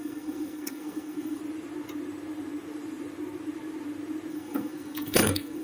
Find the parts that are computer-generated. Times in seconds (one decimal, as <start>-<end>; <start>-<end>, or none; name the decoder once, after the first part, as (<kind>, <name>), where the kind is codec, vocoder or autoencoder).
0.0-1.4 (codec, SNAC); 4.3-5.6